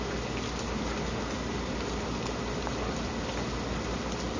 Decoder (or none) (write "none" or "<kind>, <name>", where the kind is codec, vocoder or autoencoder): none